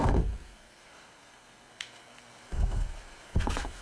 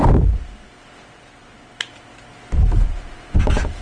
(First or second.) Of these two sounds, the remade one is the first